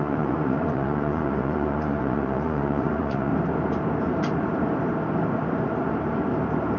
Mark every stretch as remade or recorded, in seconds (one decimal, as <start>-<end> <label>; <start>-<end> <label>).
0.0-3.3 remade; 3.3-6.8 recorded